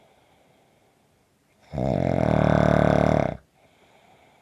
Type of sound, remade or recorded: recorded